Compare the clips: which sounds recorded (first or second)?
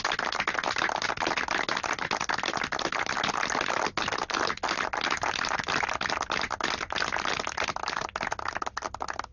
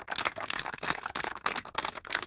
first